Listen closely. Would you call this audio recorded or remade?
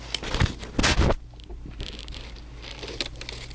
recorded